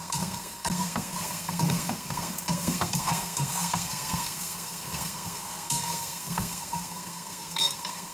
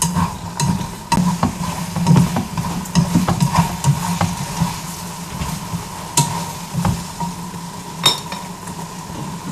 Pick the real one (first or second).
second